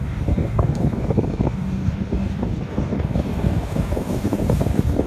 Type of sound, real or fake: fake